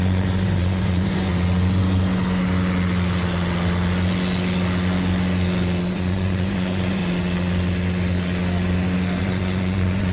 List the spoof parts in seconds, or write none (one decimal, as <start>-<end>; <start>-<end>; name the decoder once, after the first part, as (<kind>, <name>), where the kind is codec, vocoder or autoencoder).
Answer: 0.0-1.3 (vocoder, Vocos); 5.9-7.0; 9.2-10.1